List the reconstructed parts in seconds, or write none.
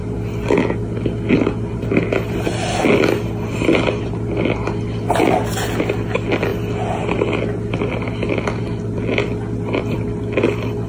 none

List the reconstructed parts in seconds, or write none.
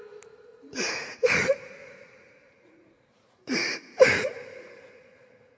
0.5-1.4 (vocoder, Vocos); 1.8-5.6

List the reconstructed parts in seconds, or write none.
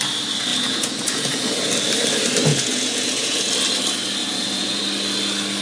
0.5-1.7 (vocoder, Vocos); 2.5-3.5; 4.2-4.8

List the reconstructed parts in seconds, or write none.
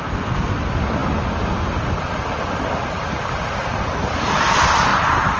none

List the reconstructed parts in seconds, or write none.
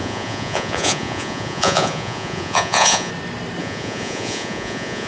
0.0-3.1 (vocoder, Vocos); 3.6-5.1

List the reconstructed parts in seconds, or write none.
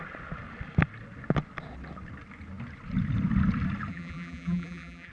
3.9-5.1 (vocoder, BigVGAN v2)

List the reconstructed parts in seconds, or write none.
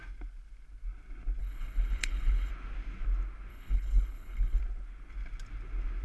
1.4-2.5 (codec, HILCodec); 3.5-4.6